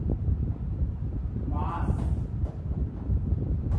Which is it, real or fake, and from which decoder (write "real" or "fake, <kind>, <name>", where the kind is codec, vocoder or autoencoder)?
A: fake, vocoder, BigVGAN v2